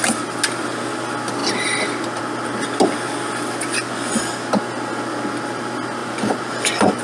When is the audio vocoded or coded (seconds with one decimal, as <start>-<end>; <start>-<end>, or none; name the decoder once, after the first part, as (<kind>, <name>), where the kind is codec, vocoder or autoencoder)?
3.7-4.3 (vocoder, Vocos); 6.0-7.0